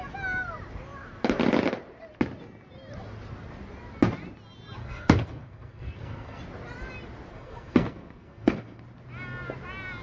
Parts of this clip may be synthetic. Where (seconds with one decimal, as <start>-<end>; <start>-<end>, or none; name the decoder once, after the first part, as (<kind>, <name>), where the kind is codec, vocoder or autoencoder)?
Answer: 4.8-6.4 (codec, SNAC); 7.3-8.8